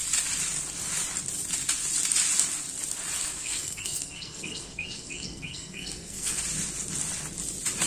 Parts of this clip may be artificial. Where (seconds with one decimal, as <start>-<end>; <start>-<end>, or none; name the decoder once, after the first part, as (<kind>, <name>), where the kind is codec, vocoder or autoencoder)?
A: 3.2-6.4 (codec, SNAC)